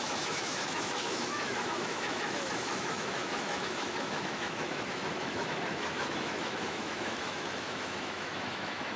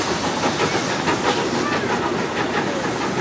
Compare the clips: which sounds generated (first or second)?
first